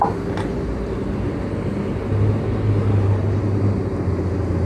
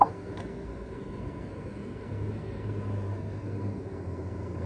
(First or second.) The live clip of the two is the first